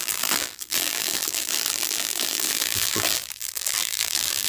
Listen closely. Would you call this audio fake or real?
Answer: fake